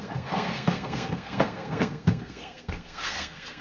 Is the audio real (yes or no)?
no